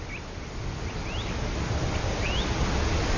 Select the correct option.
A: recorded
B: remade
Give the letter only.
A